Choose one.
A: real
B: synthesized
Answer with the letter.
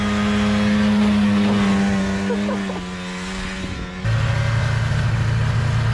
A